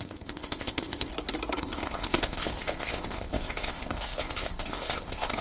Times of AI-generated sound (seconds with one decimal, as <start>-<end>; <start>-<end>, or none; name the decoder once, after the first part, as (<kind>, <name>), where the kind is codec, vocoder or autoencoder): 0.0-1.1 (codec, ZipCodec); 1.6-5.4